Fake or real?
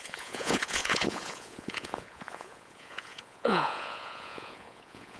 fake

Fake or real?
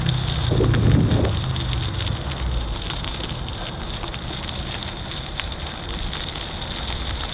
real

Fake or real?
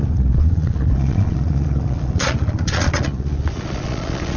fake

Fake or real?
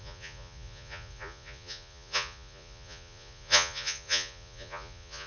fake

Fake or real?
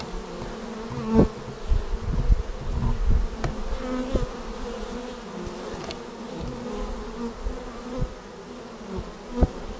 real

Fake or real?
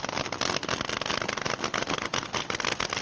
real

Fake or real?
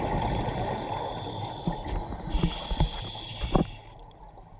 real